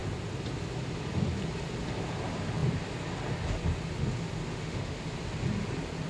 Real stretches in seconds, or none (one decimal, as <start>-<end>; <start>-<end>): 0.0-4.5; 5.0-6.1